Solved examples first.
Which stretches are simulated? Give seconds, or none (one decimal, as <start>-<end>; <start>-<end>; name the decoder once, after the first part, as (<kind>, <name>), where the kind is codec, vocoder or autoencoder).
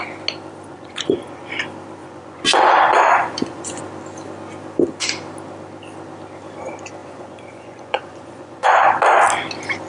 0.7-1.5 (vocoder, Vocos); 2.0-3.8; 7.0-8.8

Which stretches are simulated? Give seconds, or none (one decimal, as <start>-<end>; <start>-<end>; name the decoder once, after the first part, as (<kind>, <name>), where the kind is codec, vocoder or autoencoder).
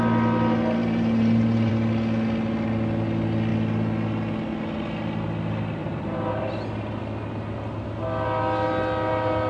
0.8-1.7 (vocoder, BigVGAN v2); 5.8-7.0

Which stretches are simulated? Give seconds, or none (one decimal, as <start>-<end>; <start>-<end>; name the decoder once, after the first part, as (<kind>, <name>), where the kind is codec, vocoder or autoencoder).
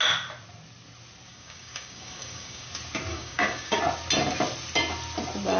1.3-2.7 (codec, DAC); 3.1-3.8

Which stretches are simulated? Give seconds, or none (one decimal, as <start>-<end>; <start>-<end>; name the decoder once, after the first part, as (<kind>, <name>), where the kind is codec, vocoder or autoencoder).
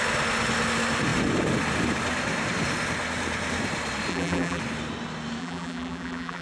4.1-4.6 (vocoder, BigVGAN v2); 5.4-6.4